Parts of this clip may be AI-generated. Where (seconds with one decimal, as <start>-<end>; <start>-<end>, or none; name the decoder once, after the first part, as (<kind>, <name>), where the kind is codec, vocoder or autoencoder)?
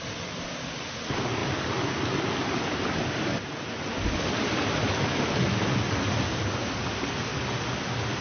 none